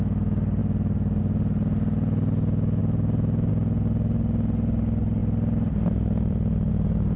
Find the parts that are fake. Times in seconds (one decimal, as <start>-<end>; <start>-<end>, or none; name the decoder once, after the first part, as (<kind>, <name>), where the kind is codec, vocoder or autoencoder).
0.6-1.2 (vocoder, BigVGAN v2); 2.8-3.5; 5.2-6.7